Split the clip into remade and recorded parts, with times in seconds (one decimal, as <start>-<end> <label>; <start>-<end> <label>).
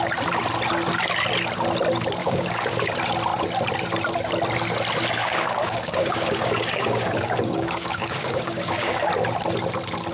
0.0-2.2 recorded; 2.2-2.9 remade; 2.9-5.2 recorded; 5.2-9.1 remade; 9.1-10.1 recorded